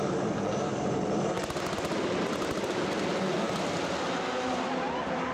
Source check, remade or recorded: recorded